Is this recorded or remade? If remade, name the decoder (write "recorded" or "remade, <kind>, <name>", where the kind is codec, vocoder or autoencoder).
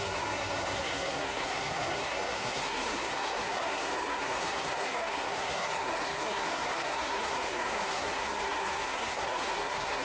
remade, codec, SNAC